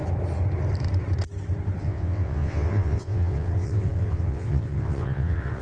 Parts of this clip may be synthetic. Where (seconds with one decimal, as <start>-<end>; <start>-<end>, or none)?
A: 1.8-5.6